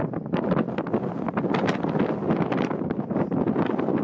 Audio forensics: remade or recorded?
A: recorded